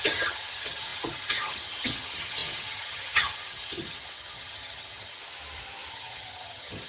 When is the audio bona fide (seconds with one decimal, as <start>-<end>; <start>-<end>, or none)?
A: 5.2-5.9